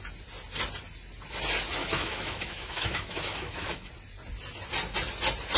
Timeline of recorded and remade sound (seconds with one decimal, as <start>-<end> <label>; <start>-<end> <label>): 0.0-1.8 recorded; 1.8-3.9 remade; 3.9-5.6 recorded